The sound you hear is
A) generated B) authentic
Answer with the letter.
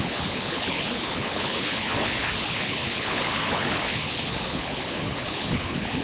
A